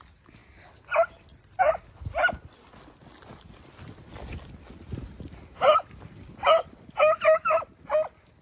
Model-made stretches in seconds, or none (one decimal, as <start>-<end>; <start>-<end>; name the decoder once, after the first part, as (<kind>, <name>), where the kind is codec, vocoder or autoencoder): none